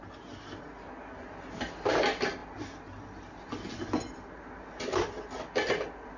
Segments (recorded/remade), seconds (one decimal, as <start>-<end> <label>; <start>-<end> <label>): 0.0-6.2 recorded